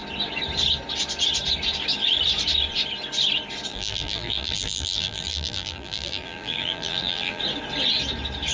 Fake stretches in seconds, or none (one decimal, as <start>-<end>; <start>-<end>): 3.7-7.4